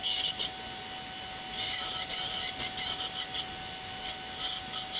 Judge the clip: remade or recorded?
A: recorded